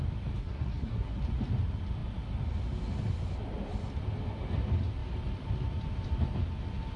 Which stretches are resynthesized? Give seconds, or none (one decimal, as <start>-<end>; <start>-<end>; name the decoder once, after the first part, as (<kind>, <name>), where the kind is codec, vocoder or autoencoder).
0.4-1.2 (codec, SNAC)